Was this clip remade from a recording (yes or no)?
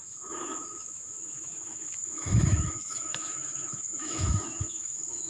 yes